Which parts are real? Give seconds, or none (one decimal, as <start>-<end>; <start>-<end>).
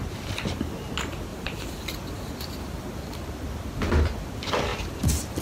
0.0-1.3; 2.6-4.7